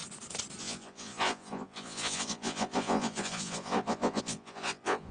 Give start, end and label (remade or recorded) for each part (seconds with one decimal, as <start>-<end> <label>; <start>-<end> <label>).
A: 0.0-0.6 recorded; 0.6-5.1 remade